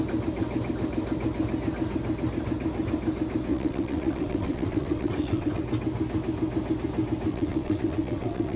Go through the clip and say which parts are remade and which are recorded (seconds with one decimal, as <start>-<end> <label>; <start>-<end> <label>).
0.0-3.5 recorded; 3.5-5.6 remade; 5.6-7.3 recorded; 7.3-8.6 remade